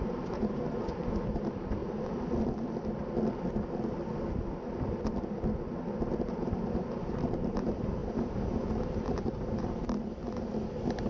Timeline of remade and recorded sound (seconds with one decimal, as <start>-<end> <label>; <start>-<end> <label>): 0.0-1.8 remade; 1.8-6.2 recorded; 6.2-11.1 remade